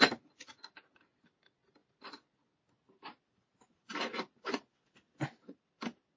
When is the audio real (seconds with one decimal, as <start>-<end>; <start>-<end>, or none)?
0.0-6.2